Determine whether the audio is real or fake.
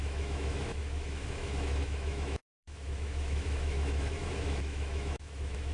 fake